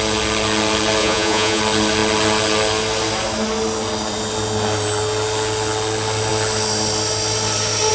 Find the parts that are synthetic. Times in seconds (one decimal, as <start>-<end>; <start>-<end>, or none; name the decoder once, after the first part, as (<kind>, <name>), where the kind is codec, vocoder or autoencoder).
1.0-1.6 (vocoder, Vocos)